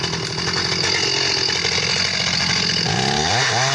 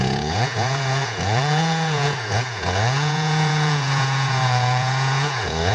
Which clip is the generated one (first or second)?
second